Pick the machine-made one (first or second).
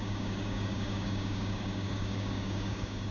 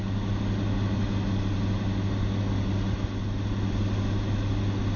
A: first